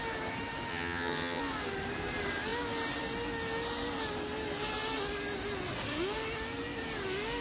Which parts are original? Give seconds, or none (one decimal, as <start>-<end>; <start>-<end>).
0.0-0.7; 1.4-7.4